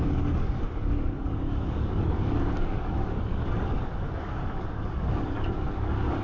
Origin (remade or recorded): remade